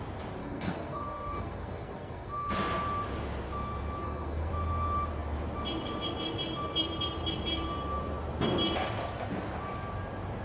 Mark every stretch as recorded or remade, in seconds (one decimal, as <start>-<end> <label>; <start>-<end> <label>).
0.0-0.4 recorded; 0.4-2.5 remade; 2.5-4.0 recorded; 4.0-4.5 remade; 4.5-10.4 recorded